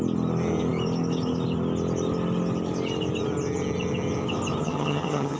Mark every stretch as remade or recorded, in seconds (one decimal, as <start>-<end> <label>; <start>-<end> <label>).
0.0-4.6 recorded; 4.6-5.4 remade